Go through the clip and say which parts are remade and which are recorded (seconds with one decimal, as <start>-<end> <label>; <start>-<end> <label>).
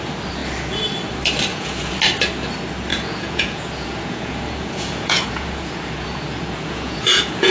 0.0-1.5 recorded; 1.5-2.0 remade; 2.0-2.9 recorded; 2.9-7.5 remade